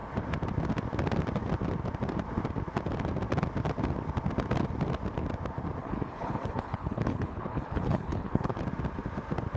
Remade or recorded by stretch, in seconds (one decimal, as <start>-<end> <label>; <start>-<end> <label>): 0.0-5.8 recorded; 5.8-8.5 remade; 8.5-9.6 recorded